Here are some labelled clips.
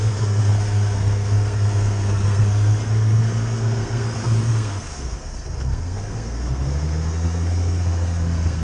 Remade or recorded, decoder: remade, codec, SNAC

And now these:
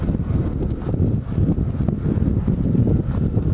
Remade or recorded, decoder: recorded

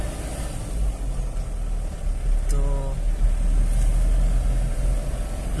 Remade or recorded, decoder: recorded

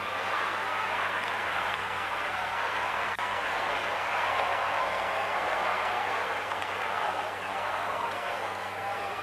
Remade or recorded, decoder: remade, codec, SNAC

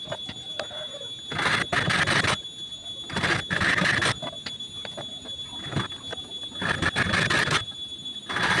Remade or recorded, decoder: recorded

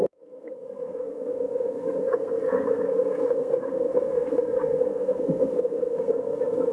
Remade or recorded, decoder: remade, codec, SNAC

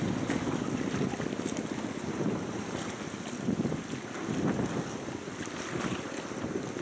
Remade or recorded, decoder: recorded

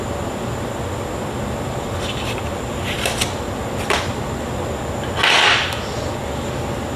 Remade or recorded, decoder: recorded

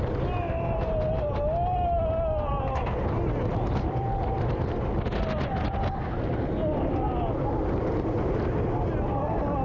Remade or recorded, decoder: recorded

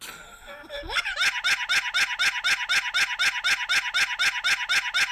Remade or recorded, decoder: recorded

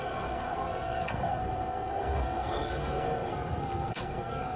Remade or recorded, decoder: remade, codec, SNAC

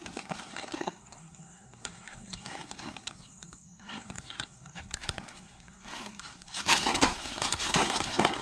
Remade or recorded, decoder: remade, codec, SNAC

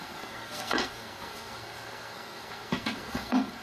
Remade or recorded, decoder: remade, codec, SNAC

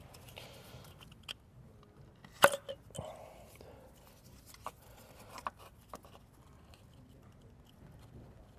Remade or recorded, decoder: recorded